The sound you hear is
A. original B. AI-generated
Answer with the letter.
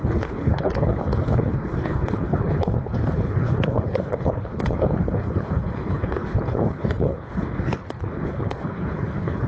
B